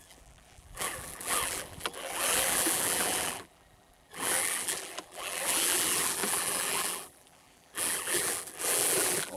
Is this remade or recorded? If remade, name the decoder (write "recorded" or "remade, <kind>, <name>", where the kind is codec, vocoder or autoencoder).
remade, vocoder, BigVGAN v2